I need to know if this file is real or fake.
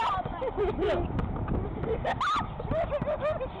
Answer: real